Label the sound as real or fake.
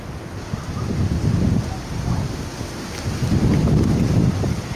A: real